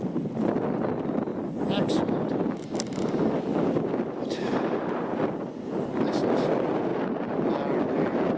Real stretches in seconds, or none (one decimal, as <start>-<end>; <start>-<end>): 0.0-8.4